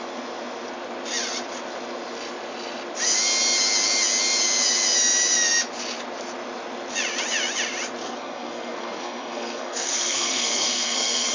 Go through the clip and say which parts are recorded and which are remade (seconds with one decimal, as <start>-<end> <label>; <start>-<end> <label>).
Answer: 0.0-8.0 recorded; 8.0-11.3 remade